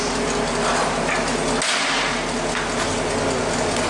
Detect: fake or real real